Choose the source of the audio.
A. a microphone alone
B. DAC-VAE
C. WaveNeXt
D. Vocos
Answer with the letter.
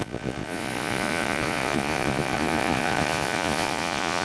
D